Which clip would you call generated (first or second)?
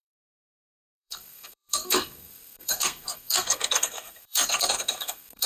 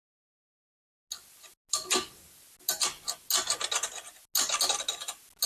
first